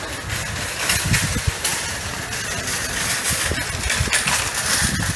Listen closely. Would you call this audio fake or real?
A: real